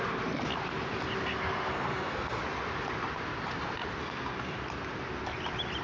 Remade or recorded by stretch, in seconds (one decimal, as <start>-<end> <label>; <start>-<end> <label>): 0.0-1.2 recorded; 1.2-2.4 remade; 2.4-4.0 recorded; 4.0-4.6 remade; 4.6-5.8 recorded